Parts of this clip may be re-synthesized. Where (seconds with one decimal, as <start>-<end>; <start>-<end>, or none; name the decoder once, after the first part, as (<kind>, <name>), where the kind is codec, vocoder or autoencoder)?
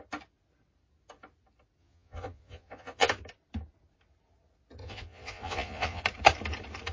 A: 1.8-3.1 (vocoder, Vocos); 4.8-6.0